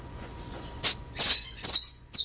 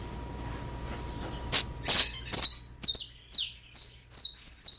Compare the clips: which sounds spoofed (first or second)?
first